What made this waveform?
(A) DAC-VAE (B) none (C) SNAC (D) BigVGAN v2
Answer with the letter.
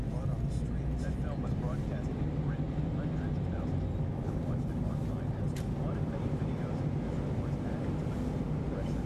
B